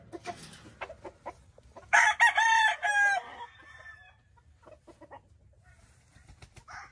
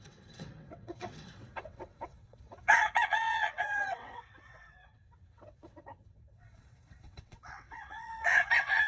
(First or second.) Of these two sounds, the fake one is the second